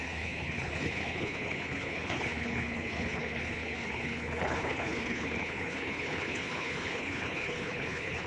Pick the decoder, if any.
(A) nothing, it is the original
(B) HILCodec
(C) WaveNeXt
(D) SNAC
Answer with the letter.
B